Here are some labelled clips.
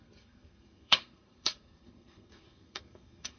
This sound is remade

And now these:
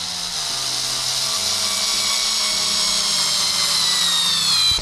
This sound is recorded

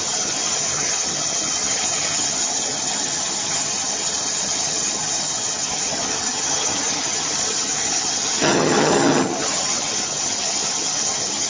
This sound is remade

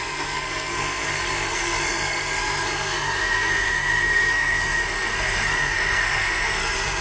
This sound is remade